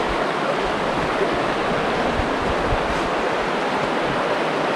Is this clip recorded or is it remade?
recorded